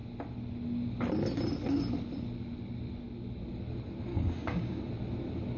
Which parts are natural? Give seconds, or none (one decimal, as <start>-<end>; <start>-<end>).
0.0-4.1; 4.8-5.6